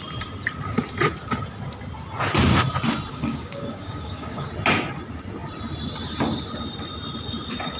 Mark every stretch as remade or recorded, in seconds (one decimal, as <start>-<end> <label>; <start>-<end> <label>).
0.0-3.1 recorded; 3.1-4.5 remade; 4.5-7.8 recorded